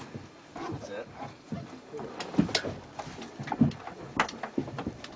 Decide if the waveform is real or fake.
real